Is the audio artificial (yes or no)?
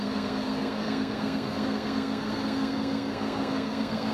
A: yes